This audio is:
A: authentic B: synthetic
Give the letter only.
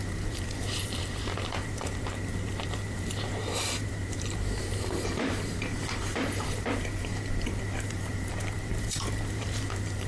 B